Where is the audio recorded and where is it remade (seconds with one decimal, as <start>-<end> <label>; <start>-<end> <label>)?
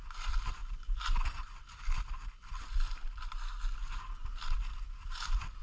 0.0-5.6 recorded